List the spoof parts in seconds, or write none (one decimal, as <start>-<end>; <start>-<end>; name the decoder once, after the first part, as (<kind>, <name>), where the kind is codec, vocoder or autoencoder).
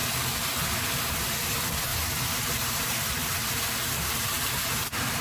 1.9-5.2 (vocoder, BigVGAN v2)